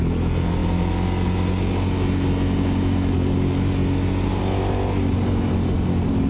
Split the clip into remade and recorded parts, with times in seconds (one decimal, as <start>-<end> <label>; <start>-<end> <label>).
0.0-6.3 recorded